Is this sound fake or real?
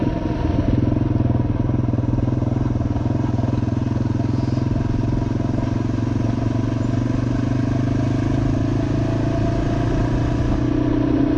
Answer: real